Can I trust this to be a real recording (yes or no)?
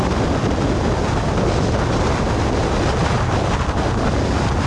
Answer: yes